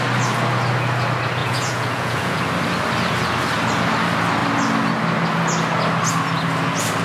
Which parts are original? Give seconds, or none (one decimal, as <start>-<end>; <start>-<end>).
0.0-1.4; 2.4-7.0